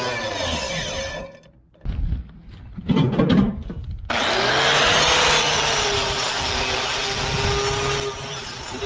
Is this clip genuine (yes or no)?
yes